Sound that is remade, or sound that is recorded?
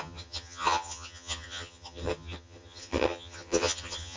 remade